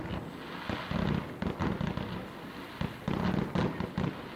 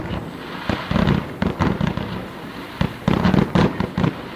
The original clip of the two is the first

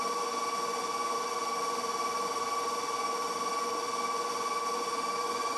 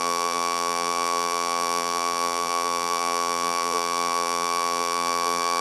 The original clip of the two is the first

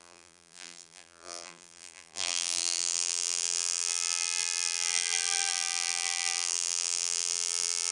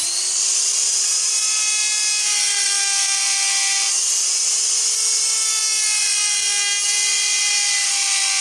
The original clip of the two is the second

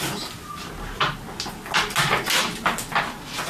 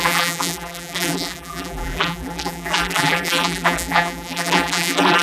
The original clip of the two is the first